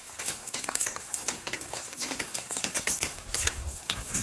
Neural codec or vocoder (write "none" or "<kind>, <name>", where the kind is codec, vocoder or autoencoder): codec, SNAC